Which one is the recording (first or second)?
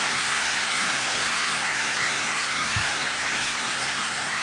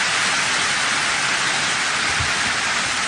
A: second